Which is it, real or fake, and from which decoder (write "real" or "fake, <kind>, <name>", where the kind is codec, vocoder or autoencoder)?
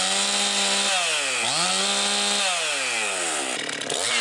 real